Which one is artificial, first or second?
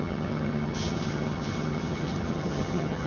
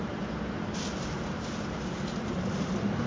first